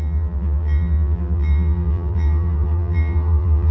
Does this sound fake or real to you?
fake